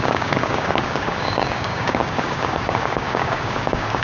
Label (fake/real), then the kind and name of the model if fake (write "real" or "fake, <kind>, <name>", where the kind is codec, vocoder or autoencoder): fake, codec, DAC